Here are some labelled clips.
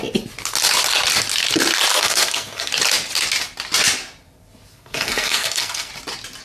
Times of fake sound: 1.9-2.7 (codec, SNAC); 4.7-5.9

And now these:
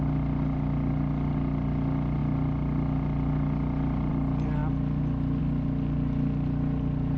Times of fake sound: none

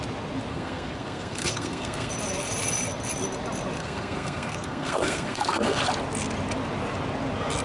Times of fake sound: 0.5-2.1 (codec, SNAC); 3.8-5.8

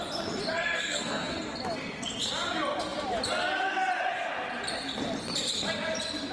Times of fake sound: 0.5-1.4 (codec, SNAC)

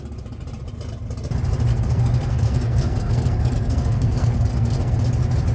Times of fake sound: 1.7-5.0 (codec, SNAC)

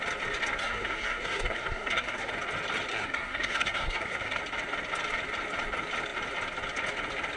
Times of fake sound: 0.6-2.3 (codec, SNAC); 2.9-4.4

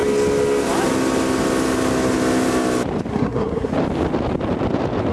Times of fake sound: 3.1-3.7 (codec, SNAC)

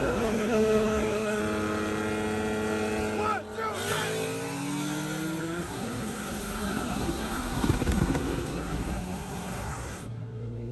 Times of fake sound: 0.0-1.4 (codec, SNAC); 5.4-10.7